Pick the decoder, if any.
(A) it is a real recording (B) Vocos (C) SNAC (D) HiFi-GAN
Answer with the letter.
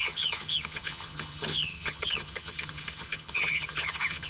D